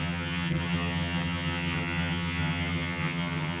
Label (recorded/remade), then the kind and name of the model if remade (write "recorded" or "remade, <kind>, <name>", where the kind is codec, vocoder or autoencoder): remade, vocoder, HiFi-GAN